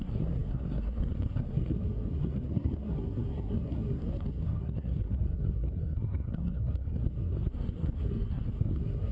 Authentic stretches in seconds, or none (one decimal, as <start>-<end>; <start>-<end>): none